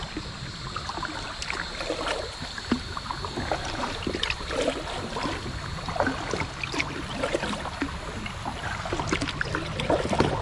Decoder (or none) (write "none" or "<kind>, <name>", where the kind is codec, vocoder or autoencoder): none